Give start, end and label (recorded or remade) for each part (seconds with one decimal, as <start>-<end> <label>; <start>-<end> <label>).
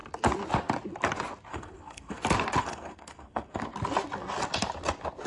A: 0.0-1.5 recorded; 1.5-2.2 remade; 2.2-2.6 recorded; 2.6-3.6 remade; 3.6-5.3 recorded